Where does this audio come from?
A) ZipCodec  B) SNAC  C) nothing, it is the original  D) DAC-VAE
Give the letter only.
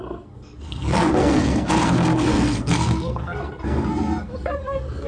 B